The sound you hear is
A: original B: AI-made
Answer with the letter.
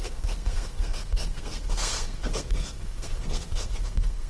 B